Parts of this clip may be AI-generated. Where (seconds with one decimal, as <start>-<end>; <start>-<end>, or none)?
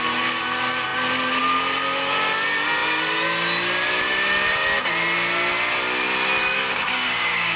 6.4-7.6